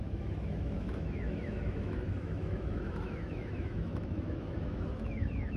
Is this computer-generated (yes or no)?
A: yes